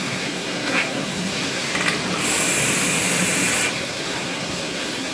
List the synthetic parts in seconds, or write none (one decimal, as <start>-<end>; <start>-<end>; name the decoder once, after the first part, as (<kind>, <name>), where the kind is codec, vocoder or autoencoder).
0.0-1.7 (codec, SNAC); 3.7-5.1